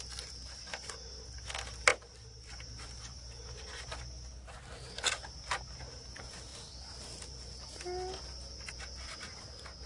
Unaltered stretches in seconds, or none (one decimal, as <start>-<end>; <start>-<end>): 0.0-9.9